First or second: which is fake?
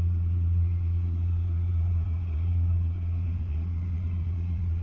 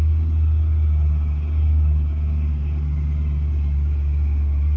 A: first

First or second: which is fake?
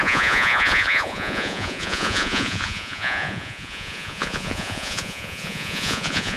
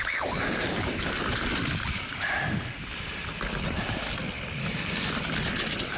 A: first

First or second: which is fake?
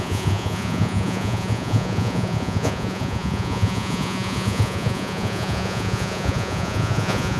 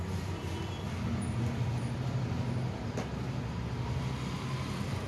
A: first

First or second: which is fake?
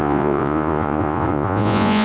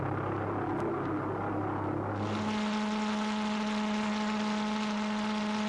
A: first